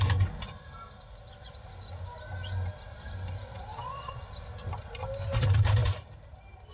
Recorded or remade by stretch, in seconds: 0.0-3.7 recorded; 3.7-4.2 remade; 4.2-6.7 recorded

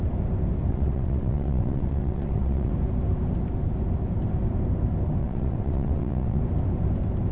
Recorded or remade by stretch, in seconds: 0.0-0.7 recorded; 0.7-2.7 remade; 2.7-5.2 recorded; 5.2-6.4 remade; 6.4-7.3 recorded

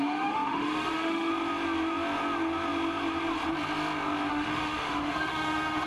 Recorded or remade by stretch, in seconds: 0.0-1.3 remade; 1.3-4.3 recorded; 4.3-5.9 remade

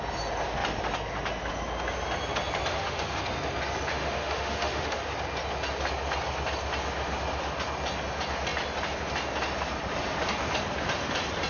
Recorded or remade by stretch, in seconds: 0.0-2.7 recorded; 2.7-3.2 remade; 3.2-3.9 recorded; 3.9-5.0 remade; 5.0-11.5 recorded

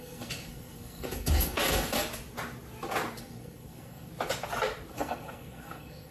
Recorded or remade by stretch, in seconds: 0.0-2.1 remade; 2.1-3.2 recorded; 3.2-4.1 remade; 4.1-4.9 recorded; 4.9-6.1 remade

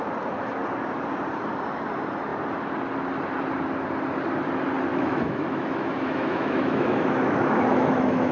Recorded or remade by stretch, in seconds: 0.0-4.9 recorded; 4.9-8.3 remade